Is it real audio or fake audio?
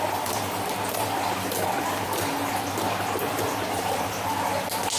real